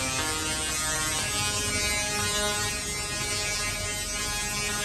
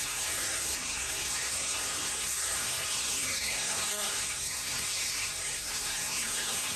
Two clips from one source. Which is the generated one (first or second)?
second